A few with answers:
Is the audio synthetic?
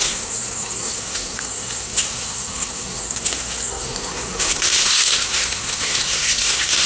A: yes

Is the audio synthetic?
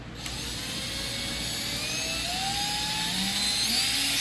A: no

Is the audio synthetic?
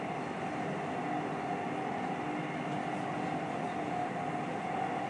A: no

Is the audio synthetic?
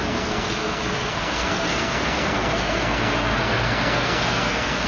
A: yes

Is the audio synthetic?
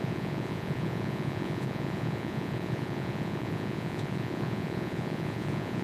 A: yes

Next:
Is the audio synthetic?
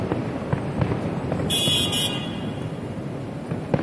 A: no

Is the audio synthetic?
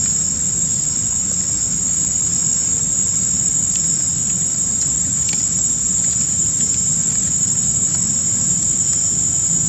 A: no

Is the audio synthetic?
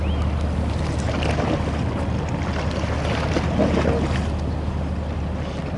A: no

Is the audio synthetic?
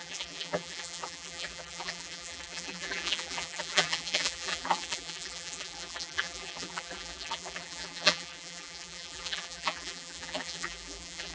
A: yes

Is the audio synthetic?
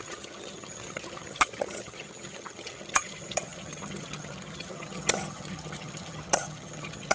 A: yes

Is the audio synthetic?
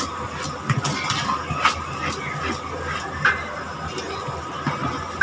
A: no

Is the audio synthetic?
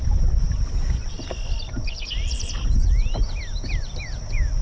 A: no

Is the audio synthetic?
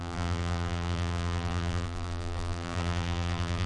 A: yes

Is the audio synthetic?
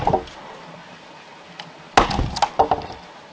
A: no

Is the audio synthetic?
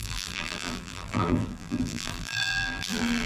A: yes